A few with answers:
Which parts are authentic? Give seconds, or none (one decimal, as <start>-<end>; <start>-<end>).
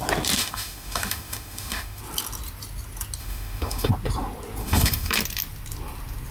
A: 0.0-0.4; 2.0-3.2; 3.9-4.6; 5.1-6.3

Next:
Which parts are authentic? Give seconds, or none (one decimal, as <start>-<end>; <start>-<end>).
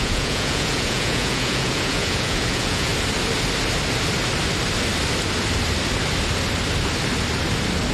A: 2.9-7.9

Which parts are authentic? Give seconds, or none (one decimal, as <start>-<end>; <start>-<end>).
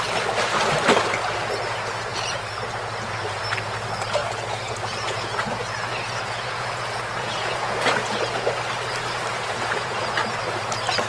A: 0.0-2.1; 3.4-4.2; 8.5-9.3; 10.0-11.1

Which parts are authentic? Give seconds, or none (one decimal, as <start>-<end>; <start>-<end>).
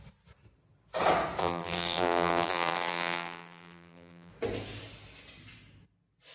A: 0.0-1.4; 4.3-6.3